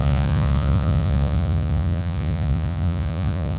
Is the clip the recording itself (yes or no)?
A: no